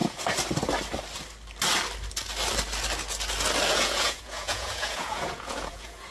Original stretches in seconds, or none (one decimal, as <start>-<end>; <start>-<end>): 0.0-3.7